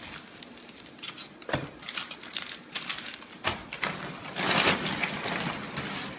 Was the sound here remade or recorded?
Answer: recorded